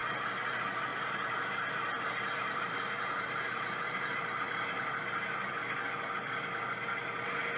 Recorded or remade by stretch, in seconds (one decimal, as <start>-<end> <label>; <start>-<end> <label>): 0.0-0.9 recorded; 0.9-5.5 remade; 5.5-7.6 recorded